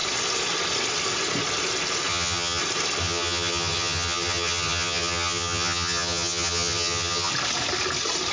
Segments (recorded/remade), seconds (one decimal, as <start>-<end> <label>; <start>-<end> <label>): 0.0-2.1 recorded; 2.1-2.6 remade; 2.6-3.0 recorded; 3.0-7.3 remade; 7.3-8.3 recorded